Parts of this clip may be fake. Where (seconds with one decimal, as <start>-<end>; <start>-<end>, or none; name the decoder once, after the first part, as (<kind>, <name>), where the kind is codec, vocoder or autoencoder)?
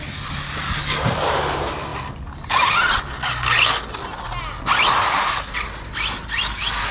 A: none